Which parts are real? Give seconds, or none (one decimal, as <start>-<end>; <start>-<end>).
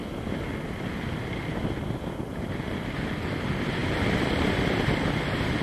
0.0-3.4; 3.8-4.5